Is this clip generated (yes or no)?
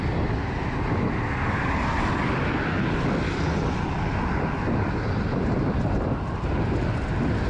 no